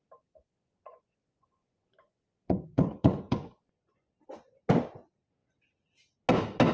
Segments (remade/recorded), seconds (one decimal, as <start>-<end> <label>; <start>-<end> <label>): 0.0-0.4 recorded; 0.4-4.1 remade; 4.1-6.7 recorded